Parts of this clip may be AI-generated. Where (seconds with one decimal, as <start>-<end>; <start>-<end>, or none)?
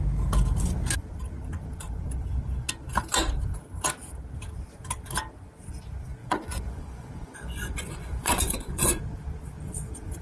6.2-9.0